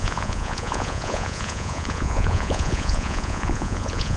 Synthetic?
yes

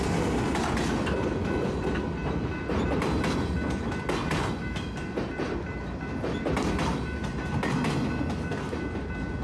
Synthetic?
no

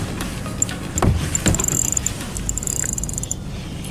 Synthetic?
no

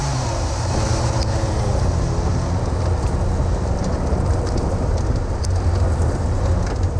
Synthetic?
no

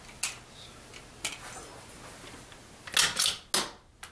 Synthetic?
no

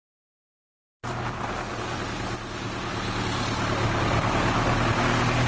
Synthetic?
no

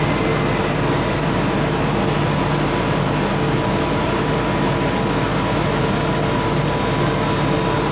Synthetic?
no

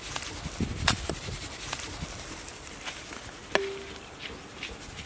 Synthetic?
no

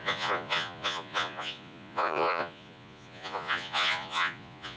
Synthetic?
yes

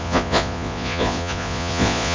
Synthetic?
yes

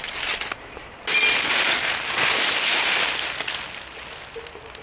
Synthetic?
no